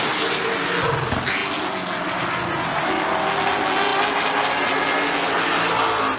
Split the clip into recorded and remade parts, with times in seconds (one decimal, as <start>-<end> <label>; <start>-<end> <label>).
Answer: 0.0-6.2 recorded